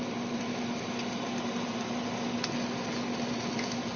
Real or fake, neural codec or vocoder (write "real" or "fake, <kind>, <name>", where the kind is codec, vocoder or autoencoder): real